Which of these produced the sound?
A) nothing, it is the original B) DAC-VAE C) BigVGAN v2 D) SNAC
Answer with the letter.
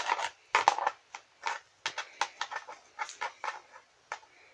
A